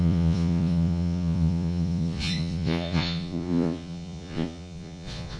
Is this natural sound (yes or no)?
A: no